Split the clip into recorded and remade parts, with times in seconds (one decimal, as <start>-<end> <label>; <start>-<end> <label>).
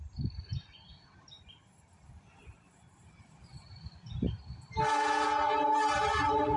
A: 0.0-6.6 recorded